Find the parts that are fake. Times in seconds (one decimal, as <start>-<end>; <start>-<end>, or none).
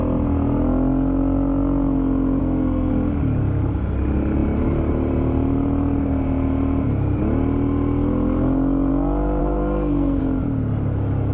2.4-2.9; 9.4-10.2